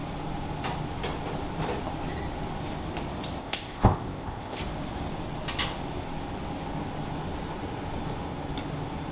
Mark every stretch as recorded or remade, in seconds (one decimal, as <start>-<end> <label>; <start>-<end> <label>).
0.0-3.4 recorded; 3.4-4.6 remade; 4.6-9.1 recorded